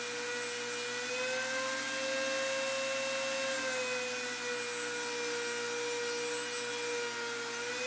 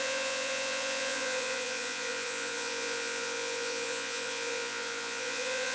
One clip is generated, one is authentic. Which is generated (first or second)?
second